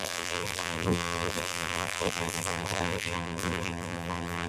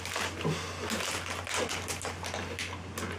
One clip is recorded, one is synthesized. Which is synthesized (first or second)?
first